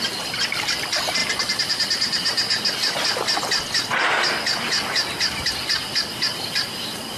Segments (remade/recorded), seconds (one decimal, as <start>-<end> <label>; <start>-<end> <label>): 0.0-7.2 recorded